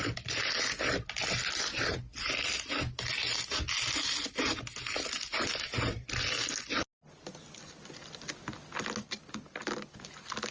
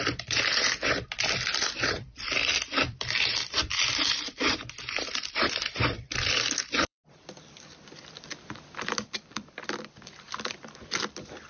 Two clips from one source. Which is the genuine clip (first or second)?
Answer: first